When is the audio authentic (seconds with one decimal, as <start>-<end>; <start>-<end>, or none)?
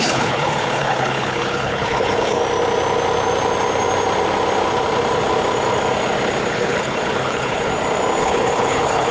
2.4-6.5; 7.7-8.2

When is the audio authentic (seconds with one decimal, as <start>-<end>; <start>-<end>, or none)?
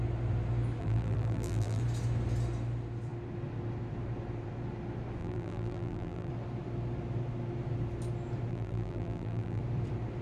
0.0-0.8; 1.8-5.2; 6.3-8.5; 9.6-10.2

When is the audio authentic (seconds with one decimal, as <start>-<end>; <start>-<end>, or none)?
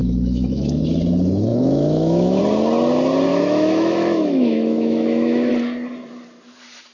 0.8-1.5; 2.4-3.3; 5.5-6.9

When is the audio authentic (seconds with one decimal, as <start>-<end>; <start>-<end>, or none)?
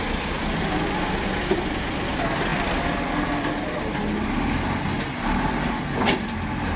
0.0-6.8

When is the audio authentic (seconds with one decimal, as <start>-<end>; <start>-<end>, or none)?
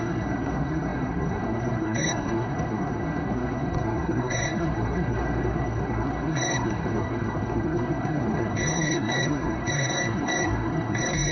none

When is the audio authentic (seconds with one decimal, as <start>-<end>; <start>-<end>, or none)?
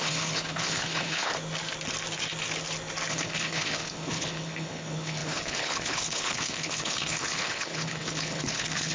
1.3-3.1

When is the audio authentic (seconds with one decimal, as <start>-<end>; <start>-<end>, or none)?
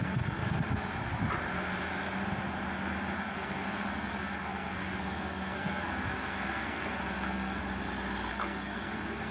0.4-3.2; 7.6-8.3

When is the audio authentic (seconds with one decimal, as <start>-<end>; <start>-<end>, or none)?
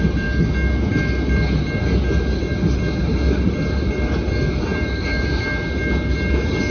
0.0-4.7; 5.4-6.7